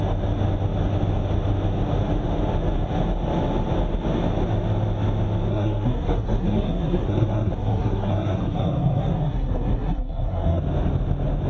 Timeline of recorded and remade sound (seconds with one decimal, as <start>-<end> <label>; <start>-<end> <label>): 0.0-5.5 recorded; 5.5-10.6 remade; 10.6-11.5 recorded